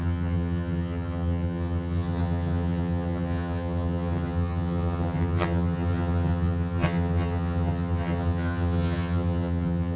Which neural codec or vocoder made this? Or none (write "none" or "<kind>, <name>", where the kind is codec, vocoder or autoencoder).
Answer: vocoder, HiFi-GAN